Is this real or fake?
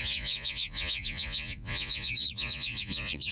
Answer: fake